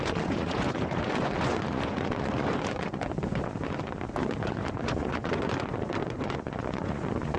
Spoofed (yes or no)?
yes